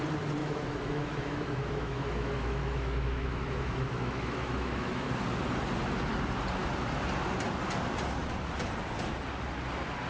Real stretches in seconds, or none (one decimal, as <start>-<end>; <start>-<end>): 0.0-0.4; 5.1-10.1